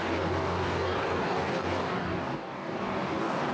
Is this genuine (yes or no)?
no